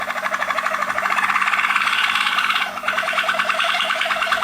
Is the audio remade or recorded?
remade